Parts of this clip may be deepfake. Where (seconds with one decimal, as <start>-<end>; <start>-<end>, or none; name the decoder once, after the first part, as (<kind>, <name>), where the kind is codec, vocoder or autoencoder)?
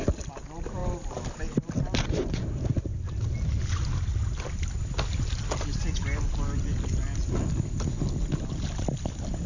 none